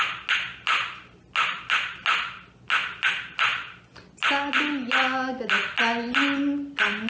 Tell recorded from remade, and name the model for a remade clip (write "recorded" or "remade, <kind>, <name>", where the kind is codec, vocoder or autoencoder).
recorded